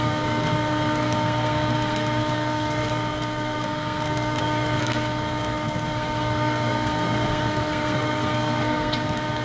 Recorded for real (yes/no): no